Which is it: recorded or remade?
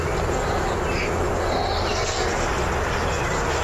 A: recorded